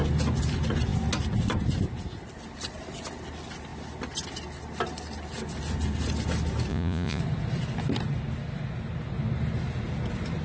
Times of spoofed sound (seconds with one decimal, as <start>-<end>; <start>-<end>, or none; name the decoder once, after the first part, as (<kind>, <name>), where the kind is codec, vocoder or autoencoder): 6.7-7.2 (vocoder, Vocos)